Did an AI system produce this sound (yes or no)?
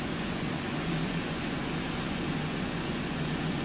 yes